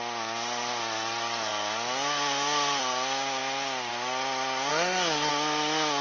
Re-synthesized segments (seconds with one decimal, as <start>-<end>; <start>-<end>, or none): 4.7-5.3